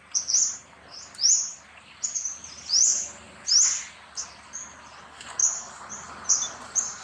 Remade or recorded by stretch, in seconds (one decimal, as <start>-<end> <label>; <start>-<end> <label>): 0.0-7.0 recorded